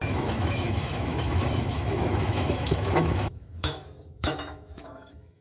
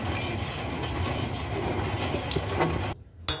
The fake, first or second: first